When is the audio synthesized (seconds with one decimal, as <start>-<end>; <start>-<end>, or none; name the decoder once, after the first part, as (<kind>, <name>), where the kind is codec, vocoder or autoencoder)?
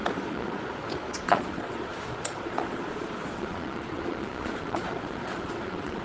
0.0-6.0 (vocoder, Vocos)